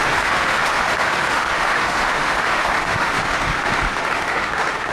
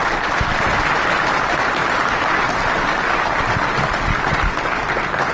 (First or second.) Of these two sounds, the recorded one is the second